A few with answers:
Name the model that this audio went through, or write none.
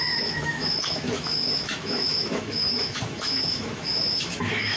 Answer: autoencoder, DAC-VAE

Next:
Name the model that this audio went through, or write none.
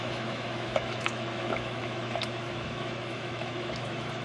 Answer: autoencoder, DAC-VAE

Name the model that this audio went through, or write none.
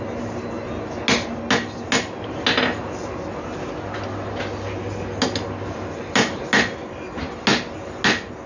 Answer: none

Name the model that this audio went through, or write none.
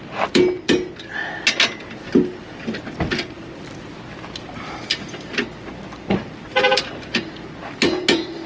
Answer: none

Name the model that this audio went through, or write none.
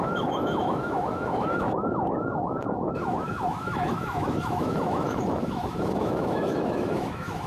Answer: autoencoder, DAC-VAE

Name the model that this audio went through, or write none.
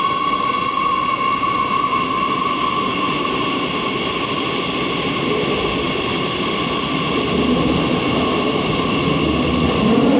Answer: none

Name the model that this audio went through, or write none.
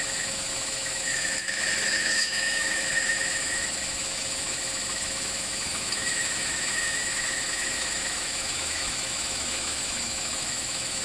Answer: autoencoder, DAC-VAE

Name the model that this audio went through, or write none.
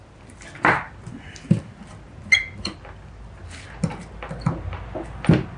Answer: none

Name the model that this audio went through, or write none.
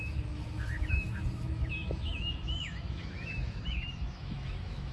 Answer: autoencoder, DAC-VAE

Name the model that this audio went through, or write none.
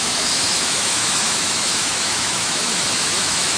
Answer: autoencoder, DAC-VAE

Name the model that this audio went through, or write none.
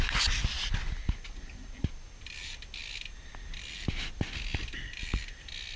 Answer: none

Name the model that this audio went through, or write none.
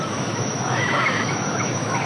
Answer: autoencoder, DAC-VAE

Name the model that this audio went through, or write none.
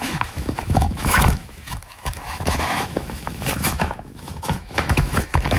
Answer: autoencoder, DAC-VAE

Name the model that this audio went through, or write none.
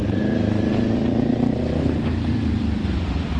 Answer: none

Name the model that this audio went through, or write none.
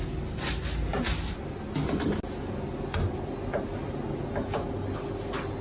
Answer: none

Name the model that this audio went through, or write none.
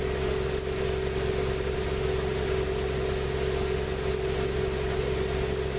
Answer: none